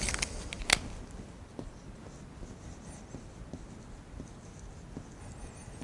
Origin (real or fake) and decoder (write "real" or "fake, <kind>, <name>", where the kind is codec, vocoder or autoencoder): real